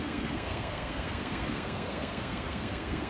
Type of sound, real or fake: fake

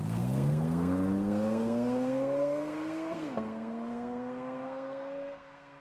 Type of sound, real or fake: fake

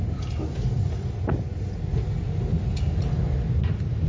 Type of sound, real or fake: real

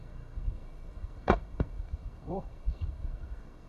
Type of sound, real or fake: fake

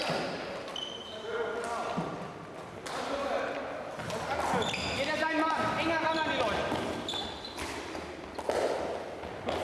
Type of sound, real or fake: real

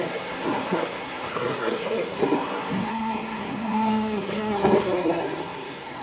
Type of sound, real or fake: fake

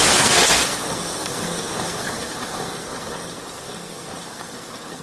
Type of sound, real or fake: fake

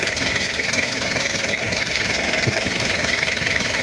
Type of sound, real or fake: fake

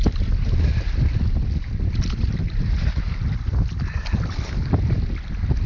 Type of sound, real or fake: real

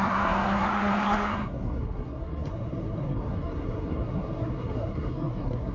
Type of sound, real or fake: fake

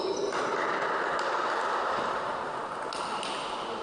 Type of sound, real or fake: real